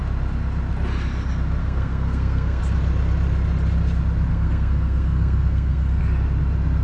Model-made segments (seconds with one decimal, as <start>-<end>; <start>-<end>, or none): 1.6-2.6; 4.3-6.0